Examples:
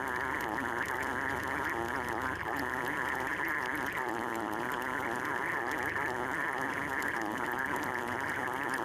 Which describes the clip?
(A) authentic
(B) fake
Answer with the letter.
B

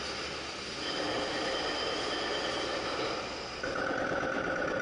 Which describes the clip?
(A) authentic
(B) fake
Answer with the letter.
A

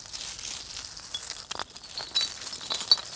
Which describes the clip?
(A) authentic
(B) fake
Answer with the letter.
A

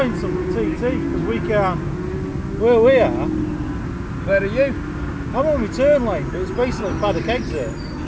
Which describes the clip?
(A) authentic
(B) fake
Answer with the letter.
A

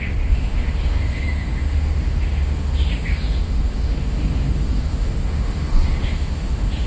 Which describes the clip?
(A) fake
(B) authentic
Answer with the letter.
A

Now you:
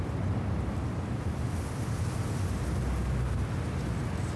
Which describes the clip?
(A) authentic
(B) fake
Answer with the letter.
A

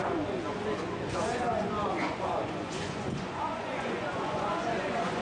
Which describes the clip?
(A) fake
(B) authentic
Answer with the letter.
A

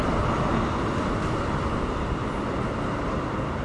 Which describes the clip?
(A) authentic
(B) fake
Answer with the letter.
A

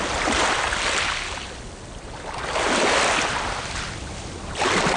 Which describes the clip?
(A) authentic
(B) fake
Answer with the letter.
A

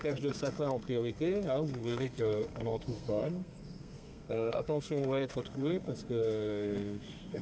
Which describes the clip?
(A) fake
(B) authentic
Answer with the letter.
A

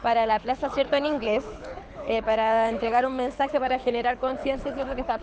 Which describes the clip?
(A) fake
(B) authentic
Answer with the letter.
A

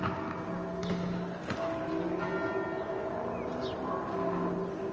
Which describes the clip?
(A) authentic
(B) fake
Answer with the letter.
A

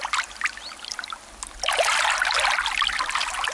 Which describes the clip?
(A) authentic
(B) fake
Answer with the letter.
A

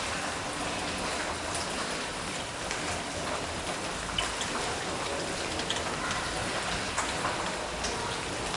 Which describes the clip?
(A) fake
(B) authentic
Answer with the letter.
B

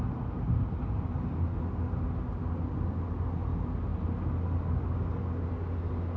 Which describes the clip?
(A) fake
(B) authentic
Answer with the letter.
B